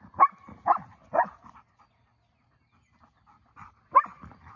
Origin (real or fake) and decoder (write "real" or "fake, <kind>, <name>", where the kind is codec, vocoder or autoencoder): real